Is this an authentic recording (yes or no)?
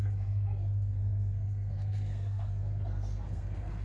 no